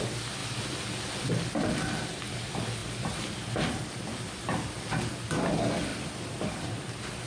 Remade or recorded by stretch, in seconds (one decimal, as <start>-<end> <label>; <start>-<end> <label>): 0.0-5.9 recorded; 5.9-7.3 remade